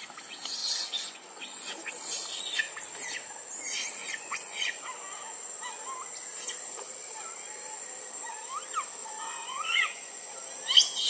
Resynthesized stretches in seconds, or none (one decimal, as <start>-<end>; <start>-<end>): 0.6-1.9; 4.0-4.8; 9.0-10.3